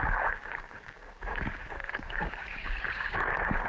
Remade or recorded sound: remade